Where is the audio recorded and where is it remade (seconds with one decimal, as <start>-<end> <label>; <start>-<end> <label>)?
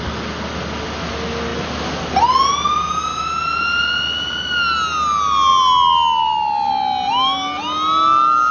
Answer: 0.0-8.5 recorded